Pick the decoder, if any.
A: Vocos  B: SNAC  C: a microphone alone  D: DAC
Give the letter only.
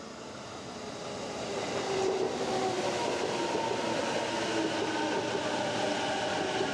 C